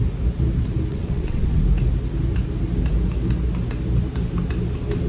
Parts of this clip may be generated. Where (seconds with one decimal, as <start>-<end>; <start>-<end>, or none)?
0.9-1.6